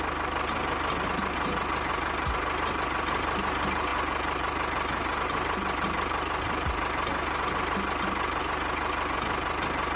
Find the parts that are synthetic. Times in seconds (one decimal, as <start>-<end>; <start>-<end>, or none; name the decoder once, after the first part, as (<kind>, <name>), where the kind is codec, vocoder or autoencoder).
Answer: none